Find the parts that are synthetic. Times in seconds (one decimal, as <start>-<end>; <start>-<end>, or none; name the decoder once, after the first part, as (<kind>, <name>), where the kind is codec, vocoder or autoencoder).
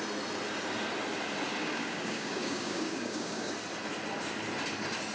1.6-3.5 (codec, DAC)